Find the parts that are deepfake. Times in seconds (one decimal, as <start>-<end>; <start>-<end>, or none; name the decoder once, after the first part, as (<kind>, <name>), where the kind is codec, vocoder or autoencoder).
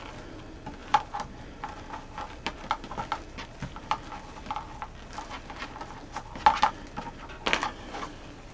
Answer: 7.6-8.5 (codec, DAC)